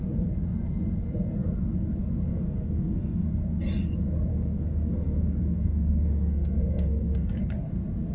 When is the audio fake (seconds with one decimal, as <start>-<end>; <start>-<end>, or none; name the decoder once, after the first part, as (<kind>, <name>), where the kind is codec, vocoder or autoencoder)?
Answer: 2.3-3.4 (codec, SNAC); 4.3-7.3